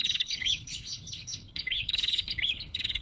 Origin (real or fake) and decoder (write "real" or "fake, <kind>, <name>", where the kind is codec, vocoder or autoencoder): fake, codec, HILCodec